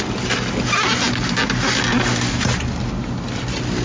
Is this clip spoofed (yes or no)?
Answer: no